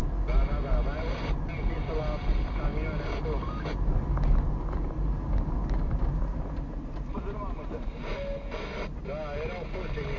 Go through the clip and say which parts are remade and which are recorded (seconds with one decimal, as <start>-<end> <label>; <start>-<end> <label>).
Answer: 0.0-10.2 recorded